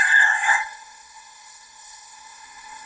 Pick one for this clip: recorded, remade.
remade